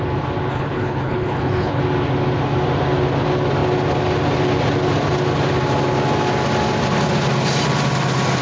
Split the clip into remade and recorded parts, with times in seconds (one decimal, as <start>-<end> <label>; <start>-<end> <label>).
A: 0.0-0.5 recorded; 0.5-1.8 remade; 1.8-8.4 recorded